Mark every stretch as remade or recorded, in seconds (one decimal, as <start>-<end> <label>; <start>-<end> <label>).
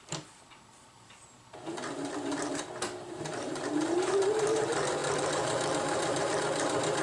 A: 0.0-3.0 recorded; 3.0-4.3 remade; 4.3-5.0 recorded; 5.0-6.3 remade; 6.3-7.0 recorded